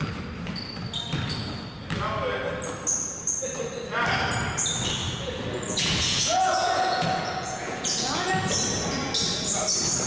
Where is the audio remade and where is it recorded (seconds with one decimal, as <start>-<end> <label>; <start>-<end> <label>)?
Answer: 0.0-5.0 recorded; 5.0-8.3 remade; 8.3-10.1 recorded

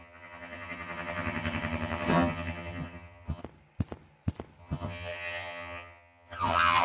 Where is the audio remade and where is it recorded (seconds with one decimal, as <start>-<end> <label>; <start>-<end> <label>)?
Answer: 0.0-3.4 remade; 3.4-4.6 recorded; 4.6-6.8 remade

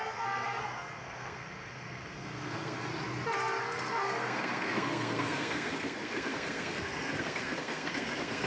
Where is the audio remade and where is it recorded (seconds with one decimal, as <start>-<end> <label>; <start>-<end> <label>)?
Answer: 0.0-2.9 remade; 2.9-3.6 recorded; 3.6-8.5 remade

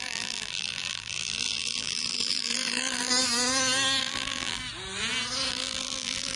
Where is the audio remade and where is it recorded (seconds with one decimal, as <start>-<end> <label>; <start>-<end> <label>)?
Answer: 0.0-3.1 remade; 3.1-4.0 recorded; 4.0-4.6 remade; 4.6-5.5 recorded; 5.5-6.4 remade

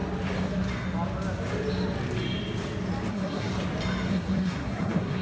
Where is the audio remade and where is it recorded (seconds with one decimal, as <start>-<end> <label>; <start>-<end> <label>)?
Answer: 0.0-3.1 recorded; 3.1-3.5 remade; 3.5-4.1 recorded; 4.1-5.2 remade

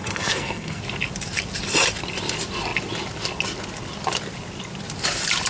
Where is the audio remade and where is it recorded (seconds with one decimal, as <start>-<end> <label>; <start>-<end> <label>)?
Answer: 0.0-0.8 remade; 0.8-5.5 recorded

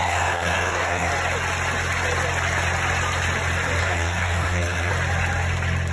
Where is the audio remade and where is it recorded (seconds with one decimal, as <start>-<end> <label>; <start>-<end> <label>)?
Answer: 0.0-1.1 remade; 1.1-3.8 recorded; 3.8-4.9 remade; 4.9-5.9 recorded